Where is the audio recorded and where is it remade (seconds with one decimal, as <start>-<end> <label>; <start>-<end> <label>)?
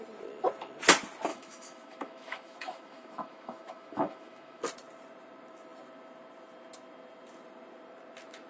0.0-1.3 recorded; 1.3-4.6 remade; 4.6-8.5 recorded